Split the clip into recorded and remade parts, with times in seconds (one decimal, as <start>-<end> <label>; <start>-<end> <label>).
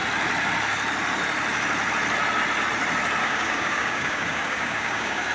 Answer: 0.0-3.2 recorded; 3.2-5.3 remade